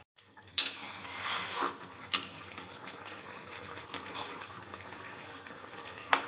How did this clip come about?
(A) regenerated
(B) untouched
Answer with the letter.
A